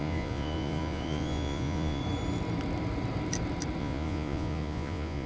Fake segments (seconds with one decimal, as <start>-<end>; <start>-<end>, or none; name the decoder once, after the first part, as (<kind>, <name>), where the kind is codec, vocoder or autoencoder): 0.0-2.0 (vocoder, Vocos); 3.8-5.3